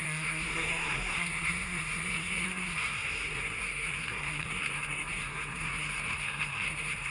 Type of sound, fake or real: fake